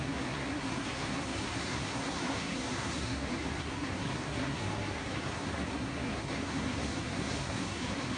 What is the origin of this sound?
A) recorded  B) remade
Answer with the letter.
B